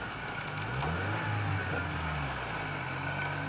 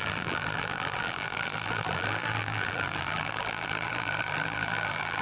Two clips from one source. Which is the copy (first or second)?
second